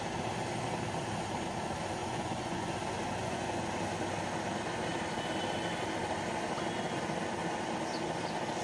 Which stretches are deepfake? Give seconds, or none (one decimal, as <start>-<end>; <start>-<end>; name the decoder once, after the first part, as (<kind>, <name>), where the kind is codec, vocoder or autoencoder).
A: 2.0-2.7 (vocoder, Vocos); 3.2-3.7